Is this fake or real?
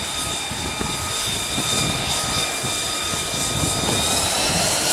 real